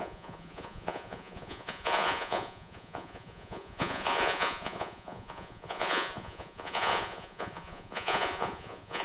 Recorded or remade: remade